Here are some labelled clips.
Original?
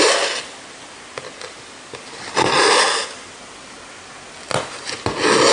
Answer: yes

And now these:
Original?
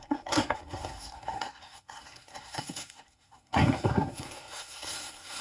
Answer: no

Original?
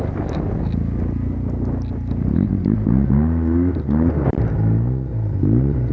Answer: yes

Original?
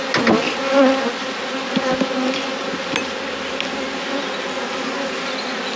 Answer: yes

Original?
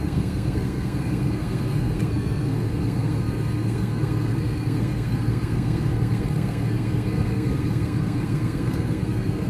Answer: no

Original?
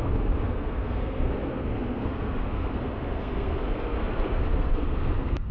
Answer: no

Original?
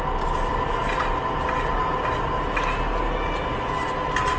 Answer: yes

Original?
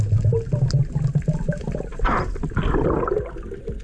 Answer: yes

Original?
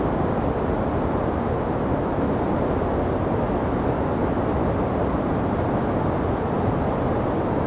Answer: yes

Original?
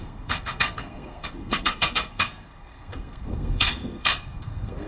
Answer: no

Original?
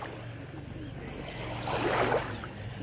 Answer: yes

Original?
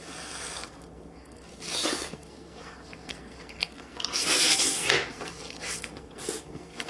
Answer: no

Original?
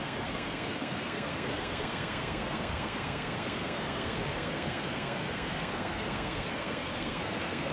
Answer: no